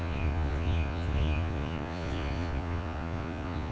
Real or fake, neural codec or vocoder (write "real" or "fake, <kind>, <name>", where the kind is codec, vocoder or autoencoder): fake, vocoder, Vocos